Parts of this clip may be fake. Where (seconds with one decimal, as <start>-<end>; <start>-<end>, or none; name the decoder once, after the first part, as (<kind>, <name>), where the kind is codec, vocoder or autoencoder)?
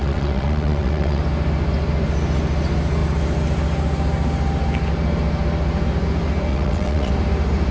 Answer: 0.0-1.2 (vocoder, WaveNeXt); 6.5-7.1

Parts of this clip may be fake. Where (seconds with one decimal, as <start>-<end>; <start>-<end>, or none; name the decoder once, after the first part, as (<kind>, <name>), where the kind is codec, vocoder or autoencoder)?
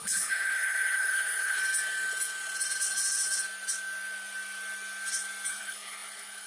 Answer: 0.0-1.6 (codec, HILCodec); 5.5-6.5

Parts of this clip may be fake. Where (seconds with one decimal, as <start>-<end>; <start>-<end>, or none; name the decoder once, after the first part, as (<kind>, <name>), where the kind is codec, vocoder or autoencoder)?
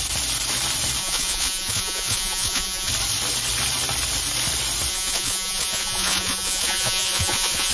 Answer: 1.0-2.9 (vocoder, Vocos); 4.9-7.7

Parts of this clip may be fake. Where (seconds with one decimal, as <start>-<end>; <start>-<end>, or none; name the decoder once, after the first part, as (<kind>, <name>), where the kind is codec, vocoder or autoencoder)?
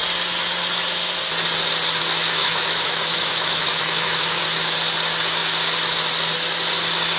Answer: 2.4-4.4 (autoencoder, DAC-VAE)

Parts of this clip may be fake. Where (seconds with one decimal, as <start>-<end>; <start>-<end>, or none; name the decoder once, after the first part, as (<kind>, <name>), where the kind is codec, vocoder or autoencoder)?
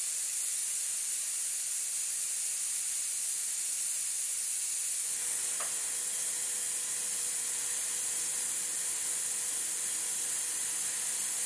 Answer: none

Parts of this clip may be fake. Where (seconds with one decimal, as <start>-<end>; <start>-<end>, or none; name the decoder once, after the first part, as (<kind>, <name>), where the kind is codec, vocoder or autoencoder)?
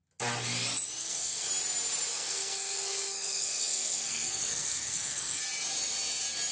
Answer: 1.0-1.5 (codec, SNAC); 2.1-5.4